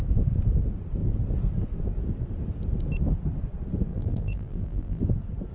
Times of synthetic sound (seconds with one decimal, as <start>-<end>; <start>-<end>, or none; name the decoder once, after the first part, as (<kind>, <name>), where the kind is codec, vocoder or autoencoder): 3.9-5.0 (vocoder, BigVGAN v2)